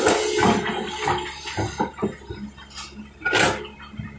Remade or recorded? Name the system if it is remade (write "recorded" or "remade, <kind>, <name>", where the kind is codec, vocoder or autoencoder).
recorded